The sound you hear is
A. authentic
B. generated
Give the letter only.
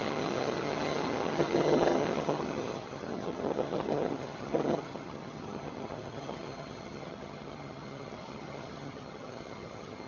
B